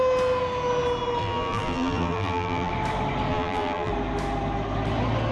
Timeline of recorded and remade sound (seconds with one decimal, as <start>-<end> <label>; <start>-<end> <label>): 0.0-1.2 recorded; 1.2-2.7 remade; 2.7-3.3 recorded; 3.3-3.9 remade; 3.9-5.3 recorded

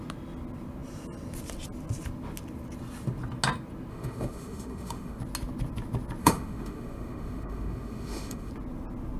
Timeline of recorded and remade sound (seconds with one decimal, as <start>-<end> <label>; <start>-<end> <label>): 0.0-3.9 recorded; 3.9-5.2 remade; 5.2-6.2 recorded; 6.2-8.5 remade; 8.5-9.2 recorded

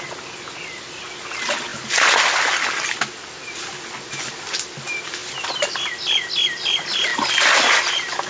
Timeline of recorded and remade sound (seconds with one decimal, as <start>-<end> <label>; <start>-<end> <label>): 0.0-8.3 recorded

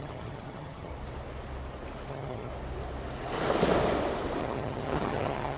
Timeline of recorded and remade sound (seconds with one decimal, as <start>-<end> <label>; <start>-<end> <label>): 0.0-0.9 remade; 0.9-2.1 recorded; 2.1-2.5 remade; 2.5-4.4 recorded; 4.4-5.6 remade

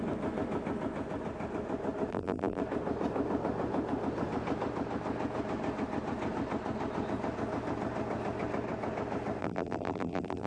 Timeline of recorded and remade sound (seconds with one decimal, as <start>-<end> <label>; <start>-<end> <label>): 0.0-2.1 recorded; 2.1-2.6 remade; 2.6-9.4 recorded; 9.4-10.5 remade

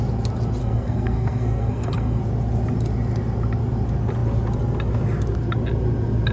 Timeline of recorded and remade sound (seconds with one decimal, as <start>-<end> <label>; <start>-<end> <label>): 0.0-0.6 recorded; 0.6-2.2 remade; 2.2-6.3 recorded

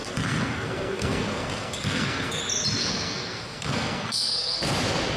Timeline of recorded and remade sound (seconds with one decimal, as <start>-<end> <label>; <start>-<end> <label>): 0.0-2.4 remade; 2.4-2.8 recorded; 2.8-4.6 remade; 4.6-5.2 recorded